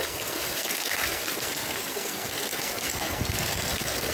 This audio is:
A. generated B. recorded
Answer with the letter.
A